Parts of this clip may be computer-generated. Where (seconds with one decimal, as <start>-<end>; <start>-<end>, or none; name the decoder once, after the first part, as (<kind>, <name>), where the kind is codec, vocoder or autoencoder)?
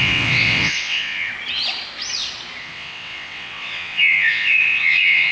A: 0.0-1.3 (vocoder, WaveNeXt); 2.6-5.3